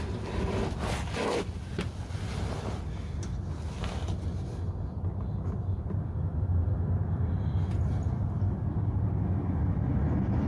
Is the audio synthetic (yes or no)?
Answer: no